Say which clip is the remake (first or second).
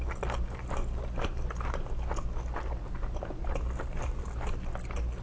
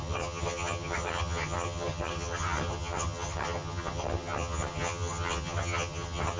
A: second